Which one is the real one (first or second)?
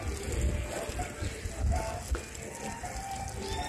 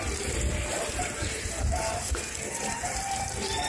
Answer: first